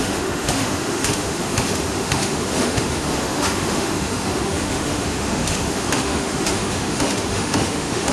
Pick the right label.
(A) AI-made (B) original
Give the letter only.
A